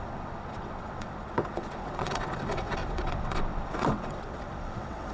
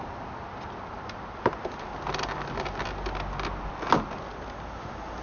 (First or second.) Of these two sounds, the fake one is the first